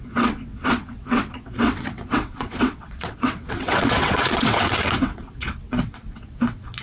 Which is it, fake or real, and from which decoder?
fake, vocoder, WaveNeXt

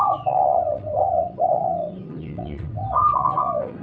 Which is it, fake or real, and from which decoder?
fake, vocoder, WaveNeXt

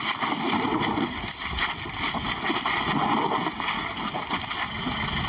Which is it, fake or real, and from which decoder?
real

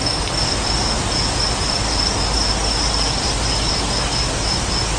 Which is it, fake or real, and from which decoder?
real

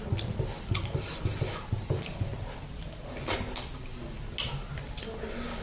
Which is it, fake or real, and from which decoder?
real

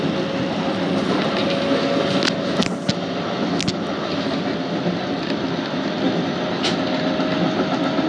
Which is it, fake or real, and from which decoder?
real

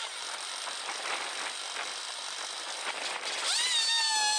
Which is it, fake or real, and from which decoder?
real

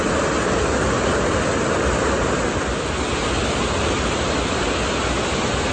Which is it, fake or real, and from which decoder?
real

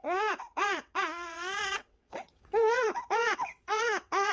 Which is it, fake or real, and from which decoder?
fake, vocoder, WaveNeXt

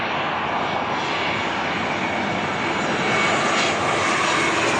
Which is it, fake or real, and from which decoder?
real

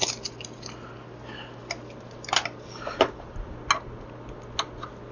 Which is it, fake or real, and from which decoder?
real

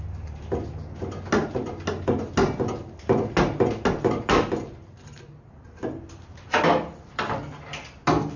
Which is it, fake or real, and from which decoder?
real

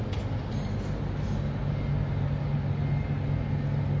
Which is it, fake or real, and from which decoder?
real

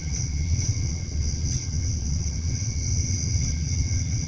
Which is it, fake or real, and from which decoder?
fake, vocoder, WaveNeXt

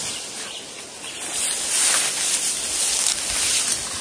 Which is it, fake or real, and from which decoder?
real